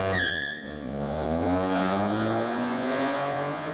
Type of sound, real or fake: fake